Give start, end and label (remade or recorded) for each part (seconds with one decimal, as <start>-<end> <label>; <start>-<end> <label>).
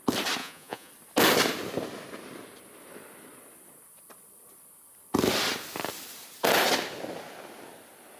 0.0-0.4 recorded; 0.4-0.9 remade; 0.9-8.2 recorded